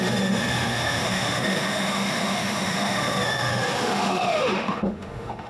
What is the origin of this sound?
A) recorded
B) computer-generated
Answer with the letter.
B